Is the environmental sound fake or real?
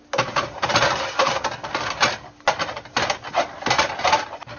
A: real